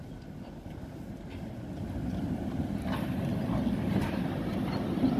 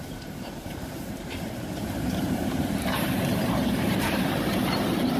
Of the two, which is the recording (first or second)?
first